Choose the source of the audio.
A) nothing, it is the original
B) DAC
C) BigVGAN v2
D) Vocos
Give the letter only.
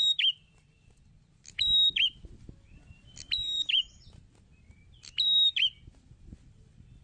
C